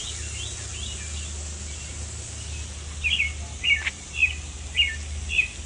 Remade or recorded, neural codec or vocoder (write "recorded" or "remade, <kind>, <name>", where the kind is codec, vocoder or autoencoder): recorded